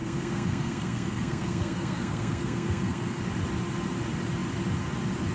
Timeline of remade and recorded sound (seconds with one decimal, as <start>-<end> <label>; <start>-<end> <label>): 0.0-3.2 remade; 3.2-5.3 recorded